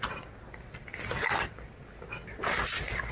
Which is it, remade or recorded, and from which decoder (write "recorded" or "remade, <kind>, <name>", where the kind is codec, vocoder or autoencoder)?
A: recorded